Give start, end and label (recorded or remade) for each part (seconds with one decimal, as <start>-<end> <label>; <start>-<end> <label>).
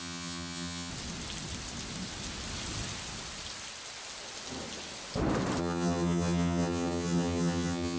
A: 0.0-0.9 remade; 0.9-5.6 recorded; 5.6-8.0 remade